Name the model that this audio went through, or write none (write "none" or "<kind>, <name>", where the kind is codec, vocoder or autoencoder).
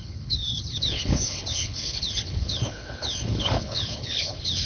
codec, HILCodec